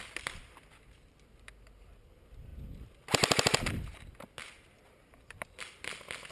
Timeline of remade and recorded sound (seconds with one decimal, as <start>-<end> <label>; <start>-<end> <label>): 0.0-6.3 recorded